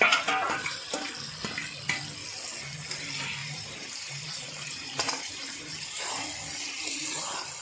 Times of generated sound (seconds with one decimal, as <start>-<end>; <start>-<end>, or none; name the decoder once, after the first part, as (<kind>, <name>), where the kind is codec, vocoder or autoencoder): 0.6-1.1 (vocoder, BigVGAN v2); 3.4-6.1